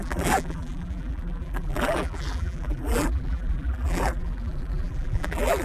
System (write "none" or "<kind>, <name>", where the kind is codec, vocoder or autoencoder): vocoder, BigVGAN v2